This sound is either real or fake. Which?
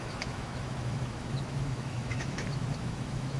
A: fake